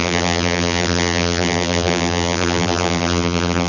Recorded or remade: remade